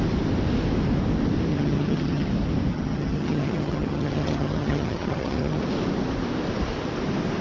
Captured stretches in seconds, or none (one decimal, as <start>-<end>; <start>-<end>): 0.0-1.5; 2.3-2.7; 5.6-7.4